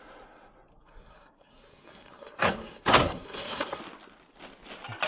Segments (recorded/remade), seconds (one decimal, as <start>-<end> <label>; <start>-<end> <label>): 0.0-0.7 recorded; 0.7-3.8 remade; 3.8-5.1 recorded